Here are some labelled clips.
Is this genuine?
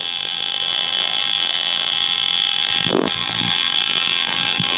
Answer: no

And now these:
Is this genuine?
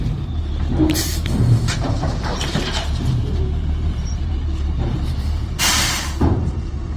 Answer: no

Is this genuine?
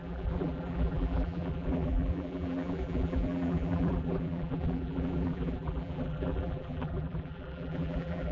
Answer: no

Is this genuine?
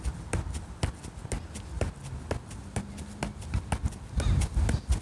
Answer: no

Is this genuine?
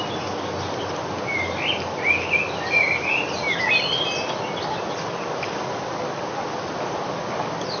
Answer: yes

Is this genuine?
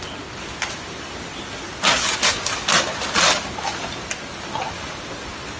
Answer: yes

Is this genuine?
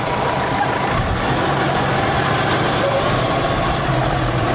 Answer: no